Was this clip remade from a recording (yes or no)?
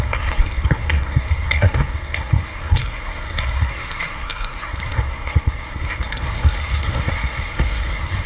yes